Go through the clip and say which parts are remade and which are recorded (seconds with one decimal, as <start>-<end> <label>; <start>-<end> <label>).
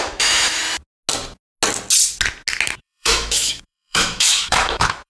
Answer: 0.0-0.6 remade; 0.6-2.8 recorded; 2.8-5.1 remade